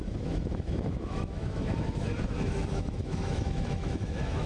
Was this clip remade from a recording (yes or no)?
yes